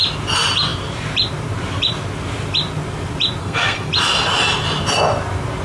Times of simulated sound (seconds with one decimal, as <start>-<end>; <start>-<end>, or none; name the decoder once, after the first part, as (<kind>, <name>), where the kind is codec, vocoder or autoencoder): 3.4-3.9 (codec, SNAC)